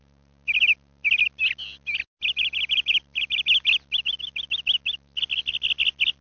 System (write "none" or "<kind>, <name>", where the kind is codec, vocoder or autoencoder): none